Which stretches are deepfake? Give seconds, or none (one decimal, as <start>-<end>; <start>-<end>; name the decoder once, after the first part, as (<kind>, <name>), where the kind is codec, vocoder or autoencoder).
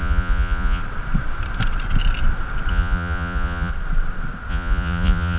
0.0-0.8 (vocoder, Vocos); 2.7-3.7; 4.5-5.4